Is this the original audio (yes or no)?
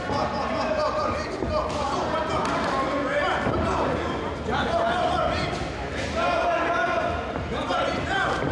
yes